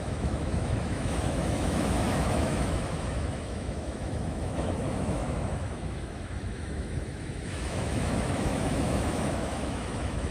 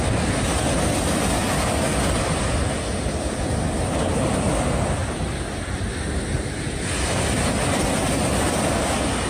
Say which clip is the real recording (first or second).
second